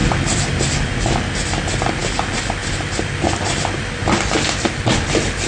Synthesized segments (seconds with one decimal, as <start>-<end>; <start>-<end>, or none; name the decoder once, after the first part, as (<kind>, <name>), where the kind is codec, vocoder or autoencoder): none